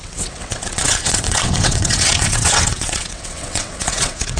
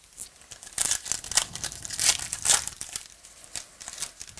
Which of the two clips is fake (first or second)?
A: first